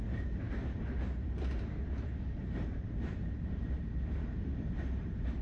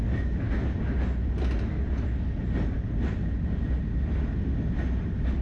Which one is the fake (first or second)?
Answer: first